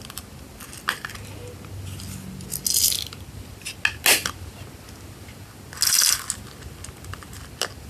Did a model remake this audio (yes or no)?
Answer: no